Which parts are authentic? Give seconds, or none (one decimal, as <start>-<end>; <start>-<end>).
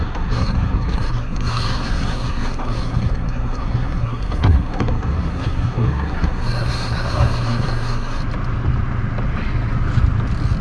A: 8.2-10.6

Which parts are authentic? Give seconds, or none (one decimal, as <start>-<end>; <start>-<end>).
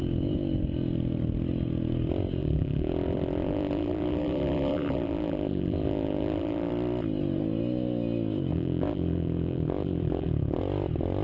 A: 0.0-2.4; 6.7-8.5; 10.6-11.2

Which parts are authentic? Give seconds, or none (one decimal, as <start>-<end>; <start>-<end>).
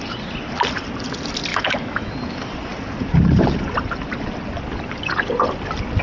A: 0.0-1.5; 2.1-6.0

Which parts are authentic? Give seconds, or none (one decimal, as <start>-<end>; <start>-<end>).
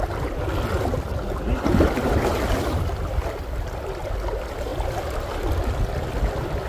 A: 0.0-6.7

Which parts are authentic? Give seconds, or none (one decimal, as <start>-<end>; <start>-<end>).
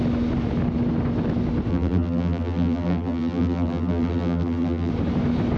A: 0.0-1.7; 4.9-5.6